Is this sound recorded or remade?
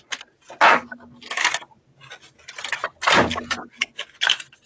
recorded